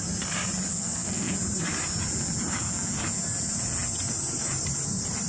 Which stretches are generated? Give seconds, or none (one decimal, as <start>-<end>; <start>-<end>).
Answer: 0.7-1.3